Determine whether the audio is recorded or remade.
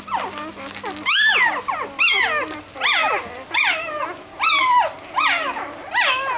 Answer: recorded